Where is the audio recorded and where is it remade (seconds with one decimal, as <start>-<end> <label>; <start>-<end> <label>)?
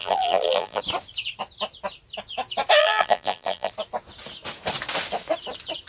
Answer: 0.0-0.8 remade; 0.8-2.8 recorded; 2.8-3.7 remade; 3.7-5.9 recorded